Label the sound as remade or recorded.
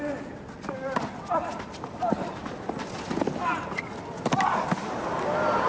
recorded